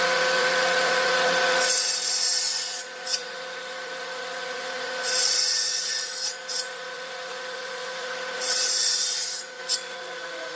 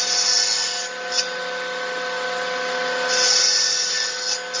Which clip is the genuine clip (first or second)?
second